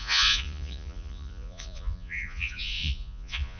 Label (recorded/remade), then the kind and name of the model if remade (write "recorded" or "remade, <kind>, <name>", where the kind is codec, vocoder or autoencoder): remade, vocoder, Vocos